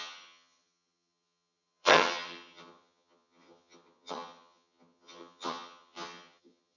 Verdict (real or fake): fake